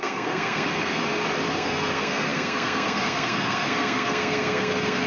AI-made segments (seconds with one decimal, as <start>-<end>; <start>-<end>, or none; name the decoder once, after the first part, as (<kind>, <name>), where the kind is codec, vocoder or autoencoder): 0.0-1.0 (codec, SNAC); 1.5-5.1